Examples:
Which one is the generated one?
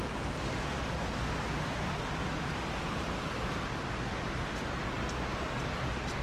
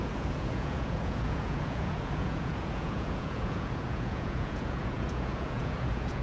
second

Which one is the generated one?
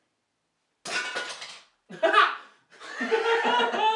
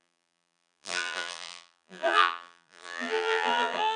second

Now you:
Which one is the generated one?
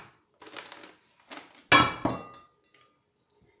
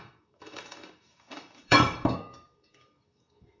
second